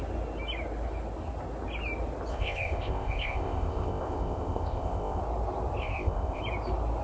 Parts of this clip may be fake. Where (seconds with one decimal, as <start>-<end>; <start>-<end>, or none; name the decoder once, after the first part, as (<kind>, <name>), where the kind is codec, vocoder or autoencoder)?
2.3-5.2 (codec, ZipCodec); 5.8-6.4